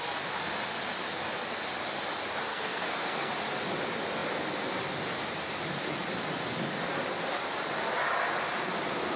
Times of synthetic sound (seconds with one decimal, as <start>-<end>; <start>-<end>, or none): 2.5-3.3